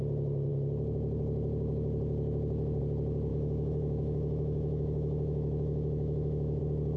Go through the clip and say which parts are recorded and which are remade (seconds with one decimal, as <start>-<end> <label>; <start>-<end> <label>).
0.0-3.3 recorded; 3.3-6.6 remade; 6.6-7.0 recorded